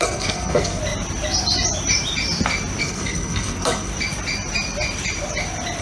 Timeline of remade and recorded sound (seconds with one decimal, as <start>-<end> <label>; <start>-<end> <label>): 0.0-0.8 remade; 0.8-2.8 recorded; 2.8-3.9 remade; 3.9-5.8 recorded